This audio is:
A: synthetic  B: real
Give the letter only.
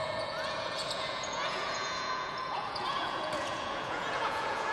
A